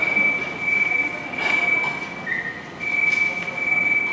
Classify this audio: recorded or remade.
recorded